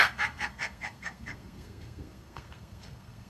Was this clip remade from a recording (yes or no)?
yes